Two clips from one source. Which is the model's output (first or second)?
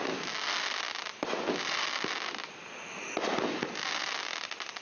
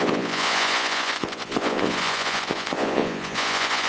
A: second